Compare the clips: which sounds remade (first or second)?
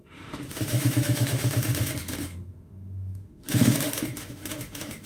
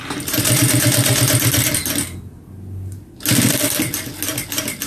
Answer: first